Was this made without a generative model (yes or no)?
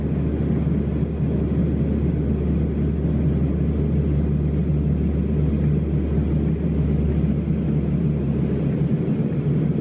yes